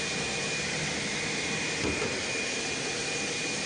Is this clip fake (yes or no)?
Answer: yes